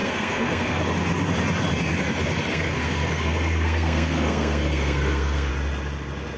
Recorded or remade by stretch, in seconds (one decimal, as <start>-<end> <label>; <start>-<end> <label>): 0.0-0.8 remade; 0.8-2.5 recorded; 2.5-5.5 remade; 5.5-6.4 recorded